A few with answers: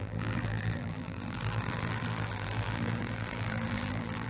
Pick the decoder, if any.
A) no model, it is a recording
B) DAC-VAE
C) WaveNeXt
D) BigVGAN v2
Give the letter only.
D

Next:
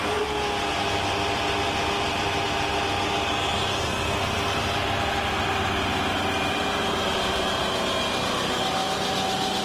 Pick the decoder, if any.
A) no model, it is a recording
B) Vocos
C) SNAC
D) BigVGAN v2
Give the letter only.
A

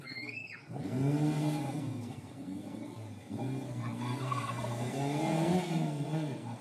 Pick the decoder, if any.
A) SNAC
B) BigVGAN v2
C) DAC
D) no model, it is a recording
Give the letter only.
A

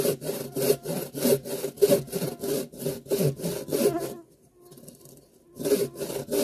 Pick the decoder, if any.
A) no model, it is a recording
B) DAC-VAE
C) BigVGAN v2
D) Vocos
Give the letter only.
A